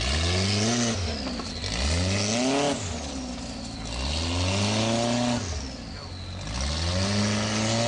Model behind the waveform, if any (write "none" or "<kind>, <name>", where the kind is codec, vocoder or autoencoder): none